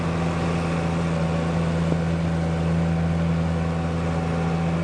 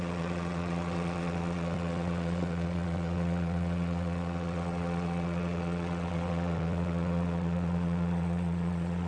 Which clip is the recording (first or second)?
first